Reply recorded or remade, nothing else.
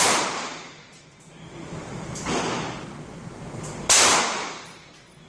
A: recorded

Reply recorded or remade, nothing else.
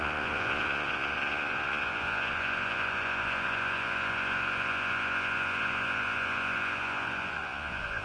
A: remade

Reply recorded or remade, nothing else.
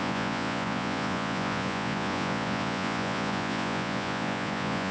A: remade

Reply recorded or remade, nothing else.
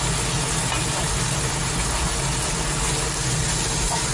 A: recorded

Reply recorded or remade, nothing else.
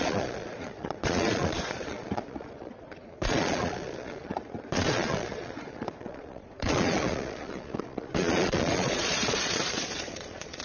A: remade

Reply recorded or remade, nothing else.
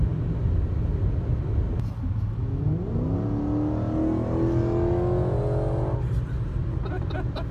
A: recorded